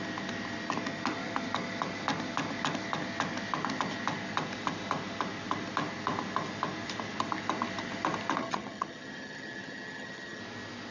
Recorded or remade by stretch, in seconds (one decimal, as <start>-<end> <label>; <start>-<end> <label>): 0.0-8.4 recorded; 8.4-10.4 remade; 10.4-10.9 recorded